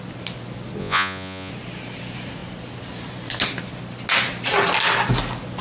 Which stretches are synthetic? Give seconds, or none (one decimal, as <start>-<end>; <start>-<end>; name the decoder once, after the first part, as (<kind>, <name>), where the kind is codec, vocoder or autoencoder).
0.8-1.5 (vocoder, Vocos)

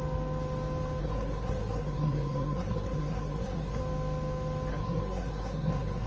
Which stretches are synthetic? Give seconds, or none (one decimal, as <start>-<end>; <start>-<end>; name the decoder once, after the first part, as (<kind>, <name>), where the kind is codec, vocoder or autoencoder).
1.0-3.8 (codec, SNAC); 4.7-6.1

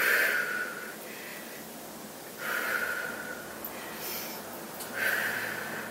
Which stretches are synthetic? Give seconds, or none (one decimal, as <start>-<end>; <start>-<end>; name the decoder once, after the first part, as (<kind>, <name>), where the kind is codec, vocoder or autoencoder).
none

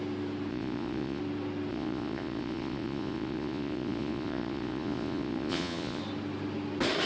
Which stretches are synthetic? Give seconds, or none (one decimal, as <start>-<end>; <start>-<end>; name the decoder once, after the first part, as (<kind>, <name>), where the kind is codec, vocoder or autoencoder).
0.5-1.2 (vocoder, Vocos); 1.7-6.0